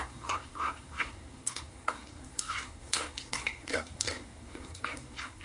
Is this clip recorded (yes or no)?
no